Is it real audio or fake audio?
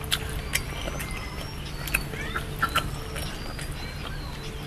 real